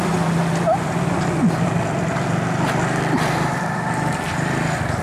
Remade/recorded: recorded